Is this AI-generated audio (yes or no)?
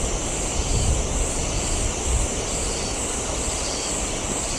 no